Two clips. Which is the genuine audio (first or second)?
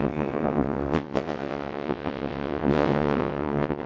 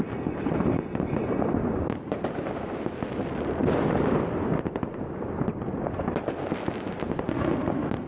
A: second